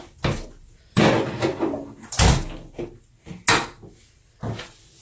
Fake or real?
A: real